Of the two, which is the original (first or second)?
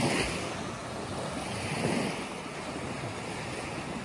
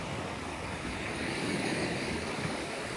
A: first